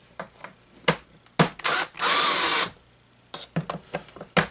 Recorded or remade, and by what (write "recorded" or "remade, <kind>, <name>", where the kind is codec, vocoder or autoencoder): recorded